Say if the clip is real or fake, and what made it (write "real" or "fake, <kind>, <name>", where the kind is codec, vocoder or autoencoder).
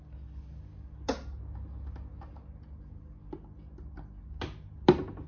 real